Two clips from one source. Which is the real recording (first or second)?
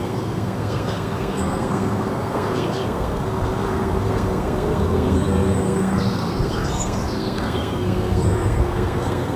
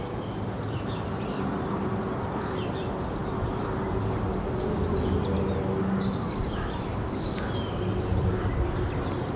second